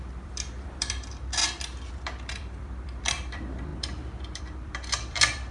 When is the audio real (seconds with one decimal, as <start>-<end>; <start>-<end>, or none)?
1.4-1.9